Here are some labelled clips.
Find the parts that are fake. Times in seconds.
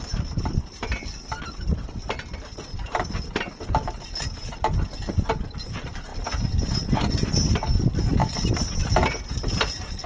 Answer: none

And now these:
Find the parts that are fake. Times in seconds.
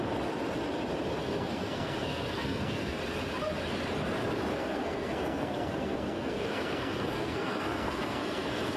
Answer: 1.2-3.0; 4.5-8.8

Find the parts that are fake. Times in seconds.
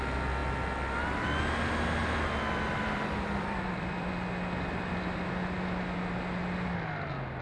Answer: 2.7-4.1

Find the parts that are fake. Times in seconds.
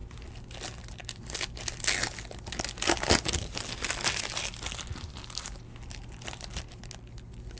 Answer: none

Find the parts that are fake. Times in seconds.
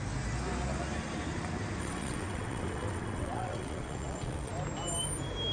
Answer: 1.8-4.5